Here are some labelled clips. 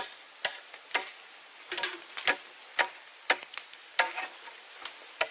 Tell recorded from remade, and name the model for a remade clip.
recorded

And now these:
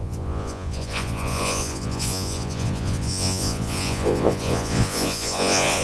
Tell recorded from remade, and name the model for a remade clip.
remade, vocoder, Vocos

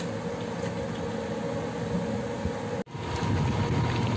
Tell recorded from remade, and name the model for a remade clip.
recorded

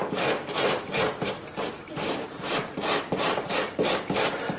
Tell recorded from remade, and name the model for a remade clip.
remade, vocoder, BigVGAN v2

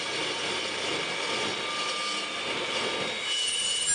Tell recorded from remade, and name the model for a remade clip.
recorded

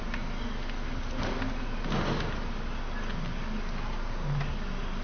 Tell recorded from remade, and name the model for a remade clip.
recorded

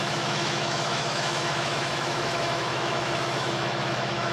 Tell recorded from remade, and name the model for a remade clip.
remade, autoencoder, DAC-VAE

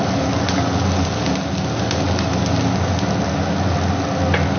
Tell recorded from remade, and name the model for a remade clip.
recorded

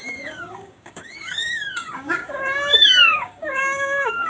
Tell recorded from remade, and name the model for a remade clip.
remade, codec, DAC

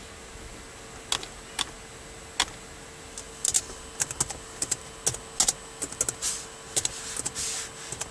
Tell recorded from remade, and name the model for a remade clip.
recorded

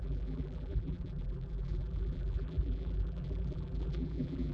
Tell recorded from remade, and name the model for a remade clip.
remade, vocoder, BigVGAN v2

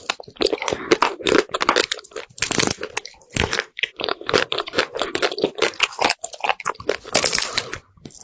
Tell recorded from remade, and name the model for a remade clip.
recorded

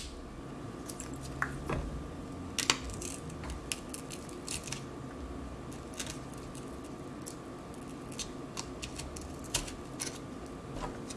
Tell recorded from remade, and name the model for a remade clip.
recorded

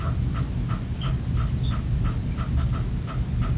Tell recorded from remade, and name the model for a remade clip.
recorded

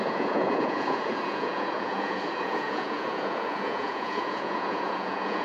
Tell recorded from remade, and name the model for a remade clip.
remade, vocoder, Vocos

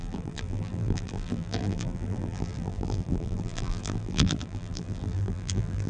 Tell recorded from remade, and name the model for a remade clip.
remade, vocoder, BigVGAN v2